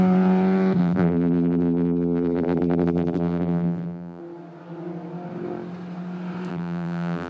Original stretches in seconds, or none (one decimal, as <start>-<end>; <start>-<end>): 0.0-0.8; 4.2-6.5